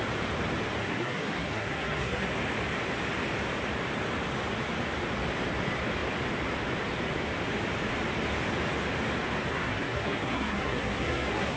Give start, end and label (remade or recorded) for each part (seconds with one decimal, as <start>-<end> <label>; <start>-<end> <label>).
0.0-0.8 recorded; 0.8-2.3 remade; 2.3-9.5 recorded; 9.5-11.6 remade